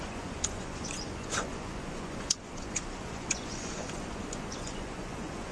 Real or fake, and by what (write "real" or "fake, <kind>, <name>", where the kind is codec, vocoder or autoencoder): fake, vocoder, Vocos